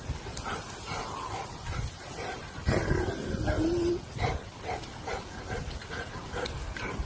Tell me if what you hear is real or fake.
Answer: real